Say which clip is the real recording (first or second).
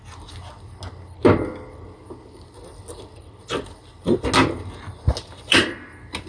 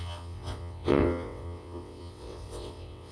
first